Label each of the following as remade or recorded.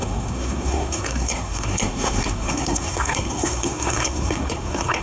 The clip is remade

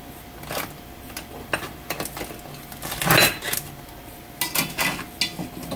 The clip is recorded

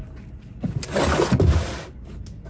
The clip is recorded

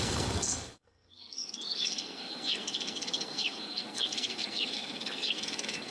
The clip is remade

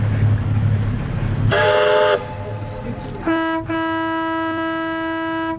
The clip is recorded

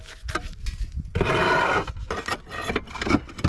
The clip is recorded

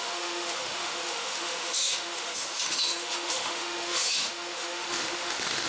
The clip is remade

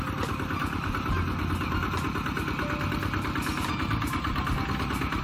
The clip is recorded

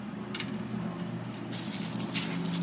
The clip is recorded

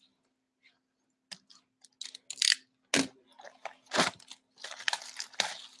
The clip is recorded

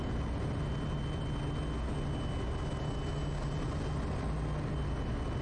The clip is recorded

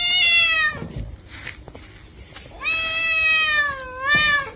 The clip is recorded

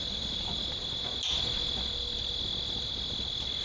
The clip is recorded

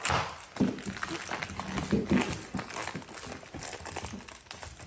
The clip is recorded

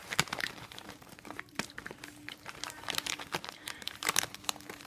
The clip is remade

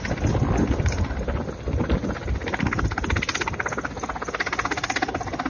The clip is recorded